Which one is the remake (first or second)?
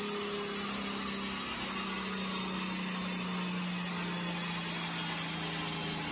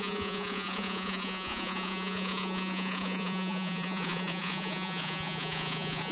second